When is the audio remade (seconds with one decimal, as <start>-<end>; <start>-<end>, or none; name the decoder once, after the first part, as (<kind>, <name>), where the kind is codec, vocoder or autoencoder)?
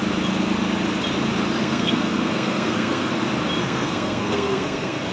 1.6-3.1 (codec, SNAC); 3.6-5.1